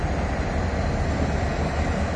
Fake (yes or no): no